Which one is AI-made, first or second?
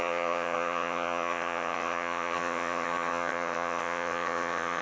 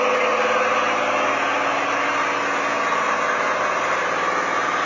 first